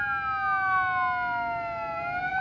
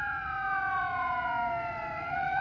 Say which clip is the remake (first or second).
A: second